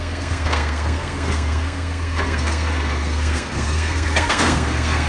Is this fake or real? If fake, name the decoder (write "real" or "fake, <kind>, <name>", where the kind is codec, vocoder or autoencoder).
fake, codec, SNAC